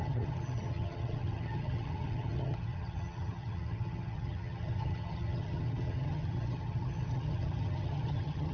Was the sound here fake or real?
fake